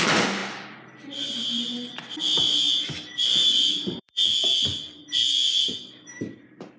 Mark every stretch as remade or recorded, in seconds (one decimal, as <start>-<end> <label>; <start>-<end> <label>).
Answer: 0.0-0.4 remade; 0.4-3.7 recorded; 3.7-6.8 remade